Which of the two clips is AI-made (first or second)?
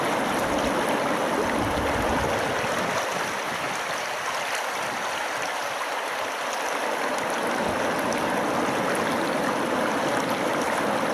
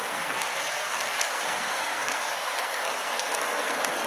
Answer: second